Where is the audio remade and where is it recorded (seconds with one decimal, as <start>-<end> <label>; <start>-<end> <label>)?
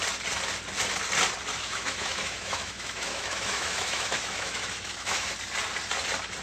0.0-1.5 recorded; 1.5-5.3 remade; 5.3-6.4 recorded